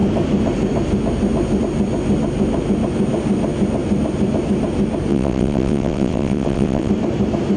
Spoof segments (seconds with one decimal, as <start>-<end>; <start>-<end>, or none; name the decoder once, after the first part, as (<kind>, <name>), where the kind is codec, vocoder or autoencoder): 5.1-6.9 (vocoder, WaveNeXt)